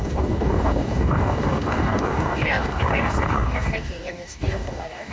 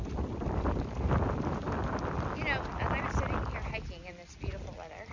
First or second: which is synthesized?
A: first